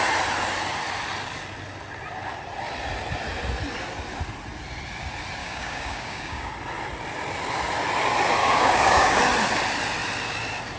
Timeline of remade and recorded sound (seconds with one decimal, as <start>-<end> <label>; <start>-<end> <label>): 0.0-5.4 recorded; 5.4-6.5 remade; 6.5-8.4 recorded; 8.4-9.2 remade; 9.2-10.8 recorded